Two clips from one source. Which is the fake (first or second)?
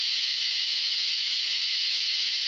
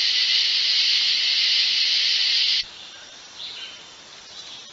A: first